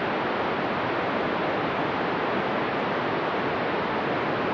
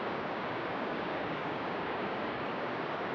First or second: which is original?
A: first